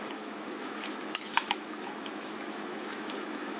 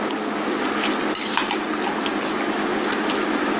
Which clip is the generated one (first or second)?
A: first